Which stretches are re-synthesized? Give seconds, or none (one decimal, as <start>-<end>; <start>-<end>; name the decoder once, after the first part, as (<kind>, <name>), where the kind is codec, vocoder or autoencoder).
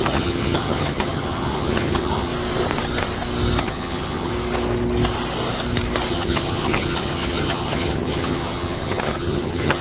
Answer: 0.0-2.3 (vocoder, HiFi-GAN); 3.6-4.3; 6.1-9.8